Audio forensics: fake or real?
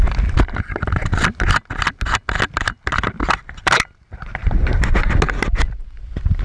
real